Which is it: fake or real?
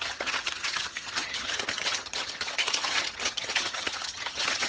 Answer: fake